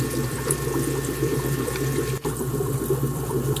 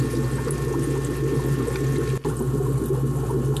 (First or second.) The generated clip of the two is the first